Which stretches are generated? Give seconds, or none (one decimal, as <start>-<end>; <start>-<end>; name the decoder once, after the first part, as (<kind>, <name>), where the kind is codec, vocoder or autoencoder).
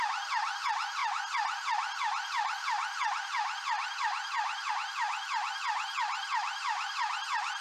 6.2-7.1 (vocoder, BigVGAN v2)